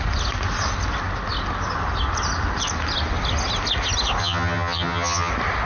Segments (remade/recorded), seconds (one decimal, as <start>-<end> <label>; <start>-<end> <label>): 0.0-4.2 recorded; 4.2-5.3 remade; 5.3-5.7 recorded